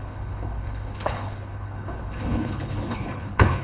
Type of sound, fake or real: fake